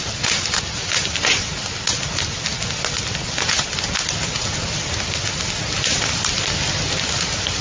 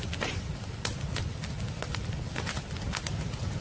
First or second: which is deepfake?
second